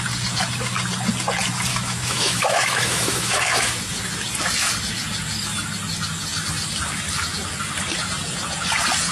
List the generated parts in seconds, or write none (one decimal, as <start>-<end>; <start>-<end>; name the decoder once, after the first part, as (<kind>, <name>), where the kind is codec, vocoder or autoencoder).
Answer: 1.7-3.8 (autoencoder, DAC-VAE)